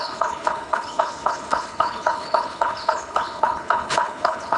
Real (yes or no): no